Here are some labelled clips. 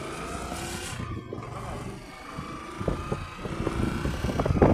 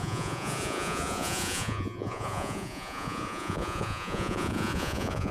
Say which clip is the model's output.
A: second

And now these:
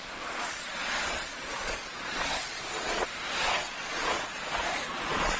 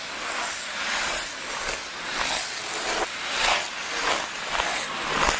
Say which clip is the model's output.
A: first